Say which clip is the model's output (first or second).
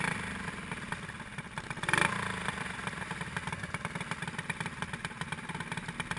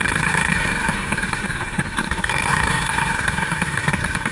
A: second